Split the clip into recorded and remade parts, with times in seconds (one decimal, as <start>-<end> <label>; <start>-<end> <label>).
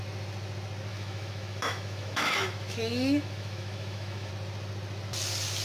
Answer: 0.0-0.9 recorded; 0.9-4.3 remade; 4.3-5.6 recorded